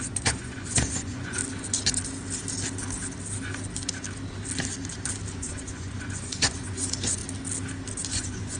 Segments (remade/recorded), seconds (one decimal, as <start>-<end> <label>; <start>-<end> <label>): 0.0-1.4 remade; 1.4-5.3 recorded; 5.3-7.2 remade; 7.2-8.1 recorded; 8.1-8.6 remade